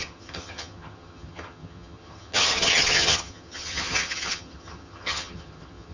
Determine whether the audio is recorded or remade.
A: remade